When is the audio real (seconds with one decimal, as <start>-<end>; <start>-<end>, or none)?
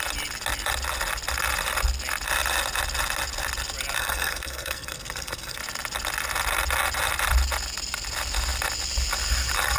0.0-4.0; 5.6-9.8